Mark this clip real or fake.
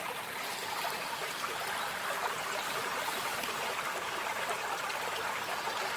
real